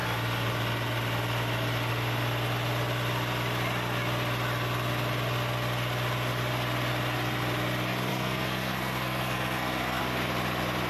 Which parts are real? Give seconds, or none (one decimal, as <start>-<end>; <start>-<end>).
0.0-8.1; 10.0-10.9